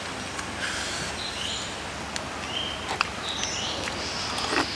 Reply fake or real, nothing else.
real